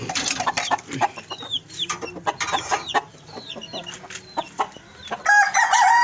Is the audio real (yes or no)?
yes